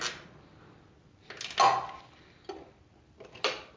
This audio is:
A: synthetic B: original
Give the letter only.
B